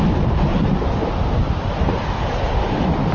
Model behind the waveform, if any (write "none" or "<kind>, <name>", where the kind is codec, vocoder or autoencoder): none